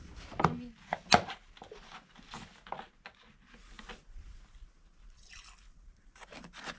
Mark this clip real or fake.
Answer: real